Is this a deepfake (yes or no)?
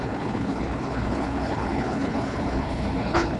yes